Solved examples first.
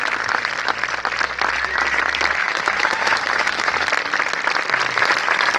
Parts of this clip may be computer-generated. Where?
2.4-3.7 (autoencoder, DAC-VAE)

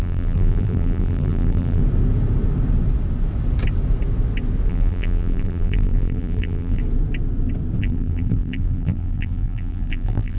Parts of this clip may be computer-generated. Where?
0.0-1.8 (vocoder, BigVGAN v2); 4.7-6.8; 7.8-10.4

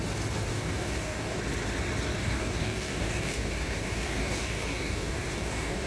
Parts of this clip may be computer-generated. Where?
0.5-1.4 (codec, DAC); 2.2-5.9